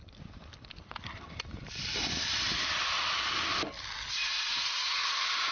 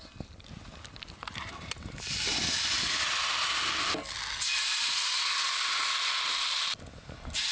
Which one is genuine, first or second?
second